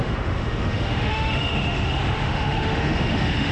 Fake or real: fake